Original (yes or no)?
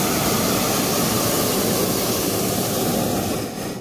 yes